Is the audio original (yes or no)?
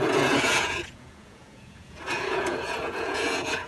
no